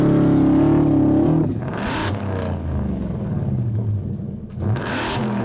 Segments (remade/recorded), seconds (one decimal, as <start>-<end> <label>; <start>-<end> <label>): 0.0-2.0 recorded; 2.0-5.4 remade